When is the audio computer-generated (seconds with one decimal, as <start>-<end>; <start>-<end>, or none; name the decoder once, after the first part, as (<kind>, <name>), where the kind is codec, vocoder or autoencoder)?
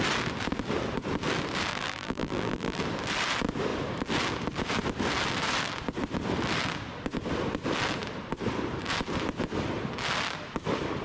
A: 1.7-2.8 (vocoder, BigVGAN v2)